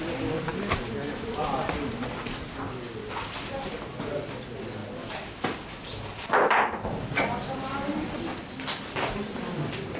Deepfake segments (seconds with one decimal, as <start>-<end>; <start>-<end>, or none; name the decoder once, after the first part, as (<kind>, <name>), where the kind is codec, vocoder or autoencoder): none